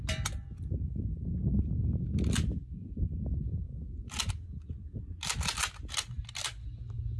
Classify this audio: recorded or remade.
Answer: recorded